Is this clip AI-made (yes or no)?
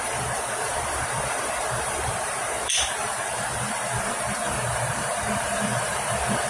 yes